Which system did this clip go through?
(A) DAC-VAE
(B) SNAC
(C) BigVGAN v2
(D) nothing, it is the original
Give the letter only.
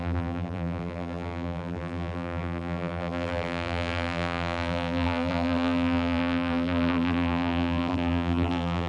C